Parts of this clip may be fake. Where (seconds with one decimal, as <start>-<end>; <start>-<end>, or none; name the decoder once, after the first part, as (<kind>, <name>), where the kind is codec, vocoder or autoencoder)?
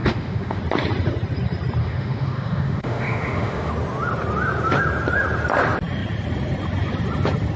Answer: 0.0-0.6 (autoencoder, DAC-VAE); 1.8-3.7